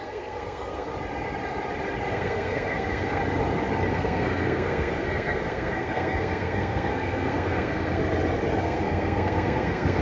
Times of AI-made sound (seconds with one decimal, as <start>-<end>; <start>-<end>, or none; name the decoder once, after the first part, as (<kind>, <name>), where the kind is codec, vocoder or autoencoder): 0.0-0.9 (codec, SNAC); 2.1-3.2; 3.9-8.0; 8.6-10.0